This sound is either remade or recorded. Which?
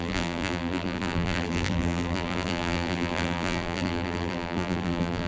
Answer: remade